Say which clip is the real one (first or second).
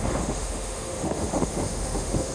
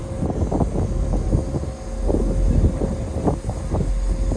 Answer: second